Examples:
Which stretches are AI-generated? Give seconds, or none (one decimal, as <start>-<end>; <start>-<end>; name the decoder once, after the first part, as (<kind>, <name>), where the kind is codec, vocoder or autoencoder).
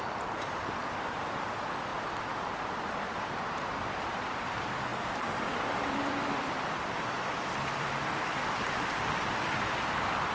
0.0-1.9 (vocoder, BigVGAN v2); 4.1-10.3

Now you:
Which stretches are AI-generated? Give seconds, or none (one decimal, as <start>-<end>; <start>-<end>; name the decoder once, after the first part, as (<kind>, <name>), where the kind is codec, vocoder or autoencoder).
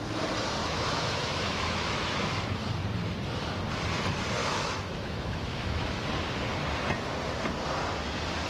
0.6-2.6 (autoencoder, DAC-VAE); 4.4-6.0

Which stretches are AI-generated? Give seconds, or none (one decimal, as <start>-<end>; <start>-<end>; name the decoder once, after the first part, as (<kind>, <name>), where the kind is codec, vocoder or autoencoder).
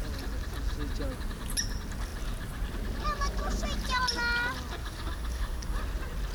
4.8-5.8 (codec, DAC)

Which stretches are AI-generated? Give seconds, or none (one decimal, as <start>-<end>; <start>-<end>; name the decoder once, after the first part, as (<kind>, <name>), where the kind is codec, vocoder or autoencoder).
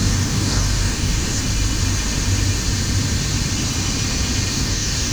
0.0-1.4 (codec, DAC); 4.5-5.1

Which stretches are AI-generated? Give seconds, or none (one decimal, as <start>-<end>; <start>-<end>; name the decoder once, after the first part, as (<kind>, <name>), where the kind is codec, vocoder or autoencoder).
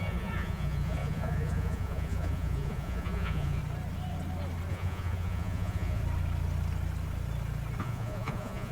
0.0-3.6 (vocoder, Vocos); 4.7-6.0; 7.8-8.7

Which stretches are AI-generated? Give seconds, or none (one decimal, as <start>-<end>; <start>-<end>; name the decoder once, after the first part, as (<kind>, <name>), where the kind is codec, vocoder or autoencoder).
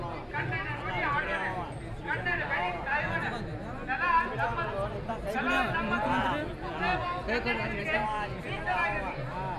none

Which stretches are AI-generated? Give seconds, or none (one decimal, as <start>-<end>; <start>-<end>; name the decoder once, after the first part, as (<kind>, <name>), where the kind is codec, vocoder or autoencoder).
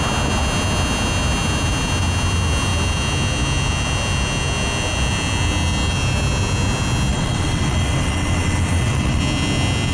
7.1-9.2 (vocoder, WaveNeXt)